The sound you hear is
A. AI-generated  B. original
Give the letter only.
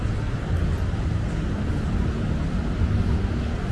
B